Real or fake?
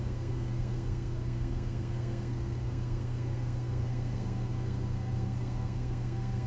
fake